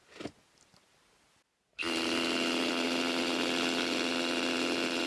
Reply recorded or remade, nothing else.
recorded